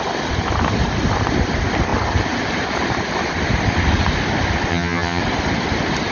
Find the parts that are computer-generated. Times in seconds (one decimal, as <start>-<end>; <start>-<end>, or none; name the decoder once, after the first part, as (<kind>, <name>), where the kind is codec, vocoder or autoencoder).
4.7-5.2 (vocoder, HiFi-GAN)